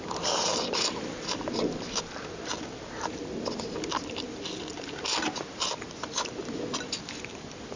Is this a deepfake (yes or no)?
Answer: no